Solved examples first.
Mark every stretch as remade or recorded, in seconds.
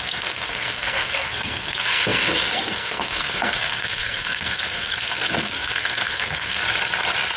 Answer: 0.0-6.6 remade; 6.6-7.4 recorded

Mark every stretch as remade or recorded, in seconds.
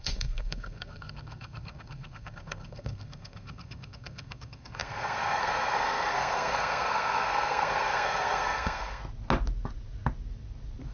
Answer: 0.0-9.0 remade; 9.0-10.9 recorded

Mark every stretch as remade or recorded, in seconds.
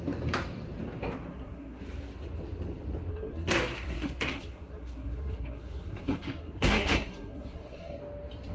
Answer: 0.0-1.3 recorded; 1.3-1.8 remade; 1.8-3.1 recorded; 3.1-8.0 remade; 8.0-8.5 recorded